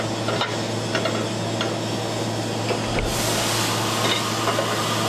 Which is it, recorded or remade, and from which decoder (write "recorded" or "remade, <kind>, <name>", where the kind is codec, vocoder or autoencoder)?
recorded